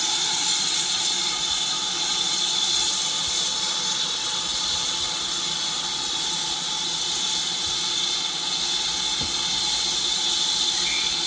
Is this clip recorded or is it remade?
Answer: recorded